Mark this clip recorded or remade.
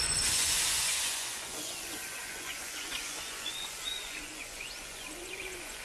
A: remade